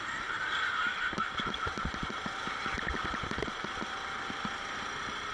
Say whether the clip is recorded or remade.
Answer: recorded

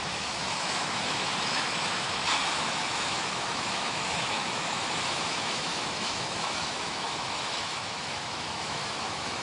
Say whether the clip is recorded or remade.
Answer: remade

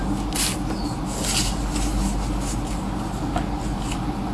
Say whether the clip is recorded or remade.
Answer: recorded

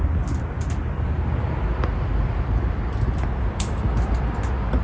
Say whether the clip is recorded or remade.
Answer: recorded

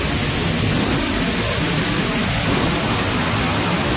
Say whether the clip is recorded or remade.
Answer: recorded